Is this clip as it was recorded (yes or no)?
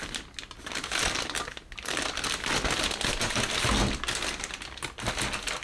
yes